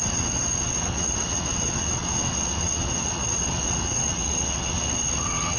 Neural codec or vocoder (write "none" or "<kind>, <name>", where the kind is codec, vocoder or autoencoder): vocoder, WaveNeXt